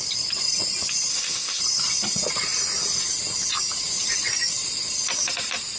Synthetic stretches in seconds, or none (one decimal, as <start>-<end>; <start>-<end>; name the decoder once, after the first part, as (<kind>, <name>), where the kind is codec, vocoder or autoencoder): 1.1-1.6 (codec, ZipCodec)